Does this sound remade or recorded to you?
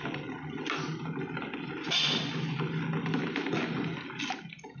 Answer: recorded